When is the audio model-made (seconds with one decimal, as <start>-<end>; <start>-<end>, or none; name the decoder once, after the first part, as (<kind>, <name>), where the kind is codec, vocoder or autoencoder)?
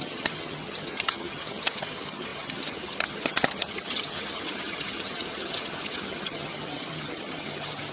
0.0-7.9 (vocoder, HiFi-GAN)